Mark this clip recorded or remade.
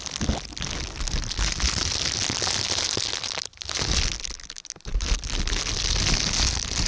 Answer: recorded